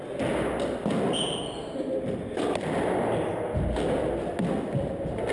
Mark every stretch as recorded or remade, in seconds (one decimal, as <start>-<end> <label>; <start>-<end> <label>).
0.0-5.3 recorded